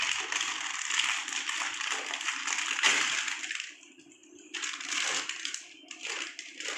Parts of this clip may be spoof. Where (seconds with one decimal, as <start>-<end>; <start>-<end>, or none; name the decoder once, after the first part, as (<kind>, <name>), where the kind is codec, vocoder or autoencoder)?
none